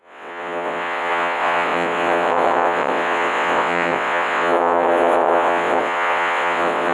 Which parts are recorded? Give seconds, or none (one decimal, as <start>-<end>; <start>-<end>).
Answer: none